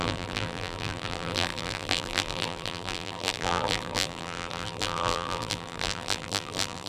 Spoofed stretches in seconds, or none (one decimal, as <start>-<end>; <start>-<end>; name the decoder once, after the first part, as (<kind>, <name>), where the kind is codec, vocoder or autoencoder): 0.0-6.9 (vocoder, BigVGAN v2)